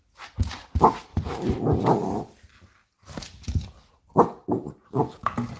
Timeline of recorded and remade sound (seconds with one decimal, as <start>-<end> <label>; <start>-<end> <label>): 0.0-5.6 recorded